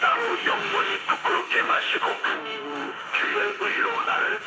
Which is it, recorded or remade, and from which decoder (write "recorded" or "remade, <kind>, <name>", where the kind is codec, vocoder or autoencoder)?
remade, autoencoder, DAC-VAE